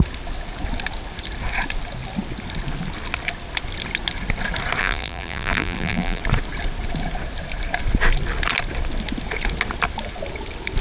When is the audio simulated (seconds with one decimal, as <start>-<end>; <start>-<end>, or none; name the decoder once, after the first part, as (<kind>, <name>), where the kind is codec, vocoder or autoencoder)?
4.8-6.2 (vocoder, BigVGAN v2)